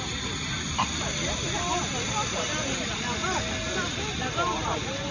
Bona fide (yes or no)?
yes